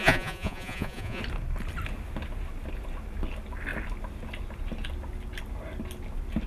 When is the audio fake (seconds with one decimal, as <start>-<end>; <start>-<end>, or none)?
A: 0.0-1.2